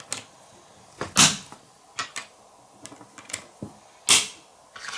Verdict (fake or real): real